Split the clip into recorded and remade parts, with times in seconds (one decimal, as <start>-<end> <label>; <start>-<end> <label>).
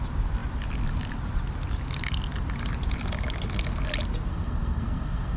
0.0-4.3 recorded; 4.3-5.4 remade